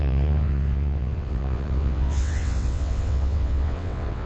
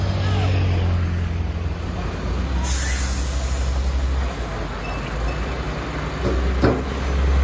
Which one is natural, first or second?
second